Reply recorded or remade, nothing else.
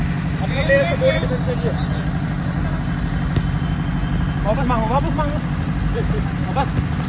recorded